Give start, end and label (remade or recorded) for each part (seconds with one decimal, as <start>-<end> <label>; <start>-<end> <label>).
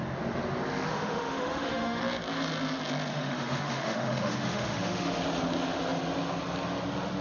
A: 0.0-0.9 recorded; 0.9-2.0 remade; 2.0-3.1 recorded; 3.1-5.2 remade; 5.2-7.2 recorded